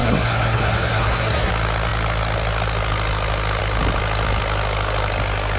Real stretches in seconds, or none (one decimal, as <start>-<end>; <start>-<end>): 1.5-5.6